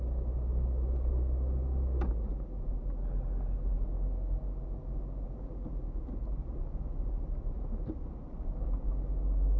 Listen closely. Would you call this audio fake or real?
real